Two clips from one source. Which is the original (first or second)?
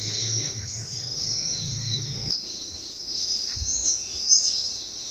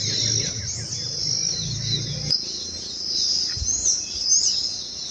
second